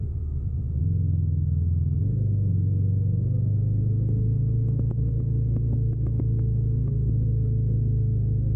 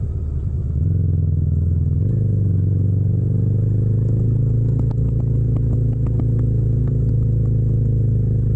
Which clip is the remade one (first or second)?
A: first